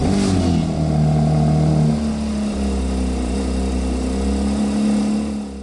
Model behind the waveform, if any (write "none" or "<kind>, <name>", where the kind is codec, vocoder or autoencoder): none